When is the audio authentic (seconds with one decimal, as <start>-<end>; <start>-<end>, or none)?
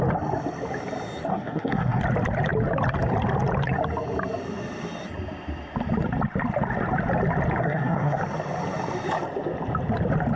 0.0-1.3; 2.0-7.6; 8.2-10.4